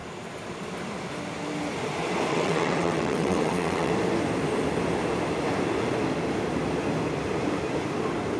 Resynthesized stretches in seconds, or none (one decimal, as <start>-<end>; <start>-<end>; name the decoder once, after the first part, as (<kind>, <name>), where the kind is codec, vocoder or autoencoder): 2.3-3.9 (vocoder, WaveNeXt)